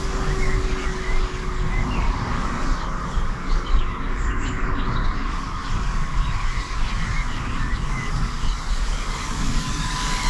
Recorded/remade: remade